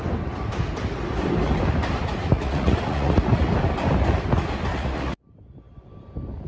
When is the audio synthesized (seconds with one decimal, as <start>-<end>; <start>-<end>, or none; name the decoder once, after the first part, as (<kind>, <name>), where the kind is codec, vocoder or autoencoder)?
2.2-3.5 (vocoder, Vocos); 4.7-5.2